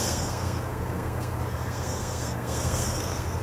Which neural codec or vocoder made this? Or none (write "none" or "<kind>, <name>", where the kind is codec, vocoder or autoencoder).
codec, SNAC